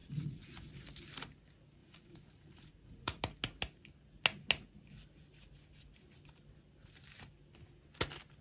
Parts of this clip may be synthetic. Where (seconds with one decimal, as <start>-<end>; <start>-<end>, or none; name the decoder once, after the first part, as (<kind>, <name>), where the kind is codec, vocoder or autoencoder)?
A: 0.0-0.7 (vocoder, Vocos); 1.8-3.2